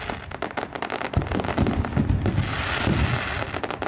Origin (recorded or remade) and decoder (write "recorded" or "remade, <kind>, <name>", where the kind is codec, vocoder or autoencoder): recorded